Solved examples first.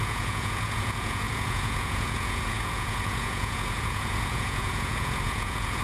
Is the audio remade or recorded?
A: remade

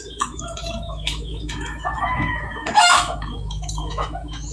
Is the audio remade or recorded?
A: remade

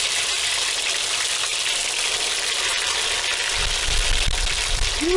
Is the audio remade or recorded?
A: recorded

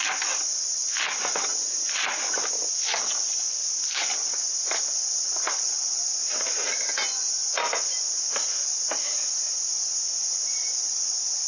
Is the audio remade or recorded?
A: recorded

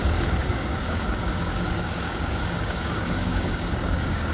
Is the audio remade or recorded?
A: remade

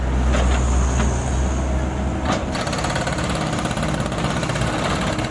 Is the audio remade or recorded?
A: recorded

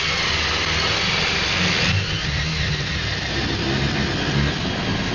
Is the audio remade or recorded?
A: recorded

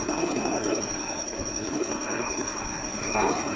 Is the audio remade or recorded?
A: remade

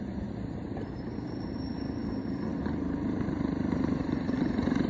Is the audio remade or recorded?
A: remade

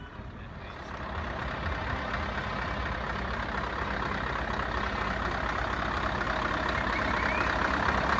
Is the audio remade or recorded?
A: recorded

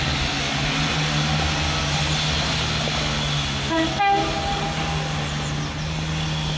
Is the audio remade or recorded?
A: recorded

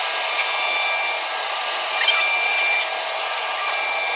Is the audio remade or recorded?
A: recorded